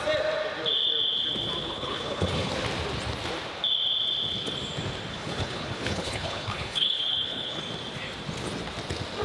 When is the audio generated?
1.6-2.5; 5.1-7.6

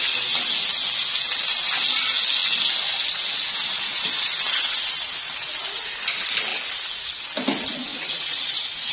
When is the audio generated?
7.9-8.9

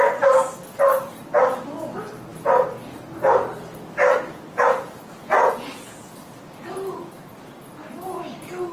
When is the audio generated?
5.4-6.1

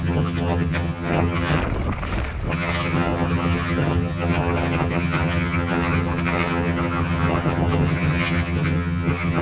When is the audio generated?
0.0-1.6; 2.5-9.4

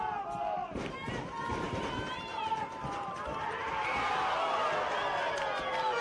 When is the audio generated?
0.6-1.1; 2.3-4.2

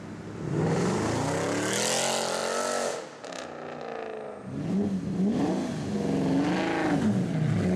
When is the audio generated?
none

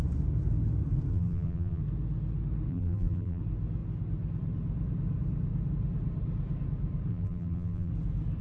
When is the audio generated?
1.1-1.8; 2.7-3.4; 7.1-7.9

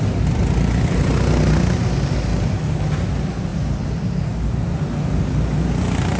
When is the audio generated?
none